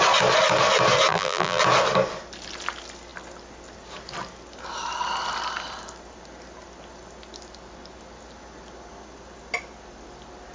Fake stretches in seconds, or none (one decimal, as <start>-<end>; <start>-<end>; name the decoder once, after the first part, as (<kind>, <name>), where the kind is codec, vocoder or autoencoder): 1.1-1.6 (vocoder, BigVGAN v2)